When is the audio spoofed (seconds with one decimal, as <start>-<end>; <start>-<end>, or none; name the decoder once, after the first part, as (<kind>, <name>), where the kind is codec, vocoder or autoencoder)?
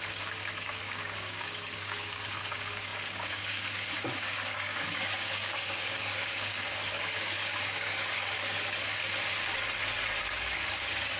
0.0-9.0 (codec, DAC); 10.2-11.2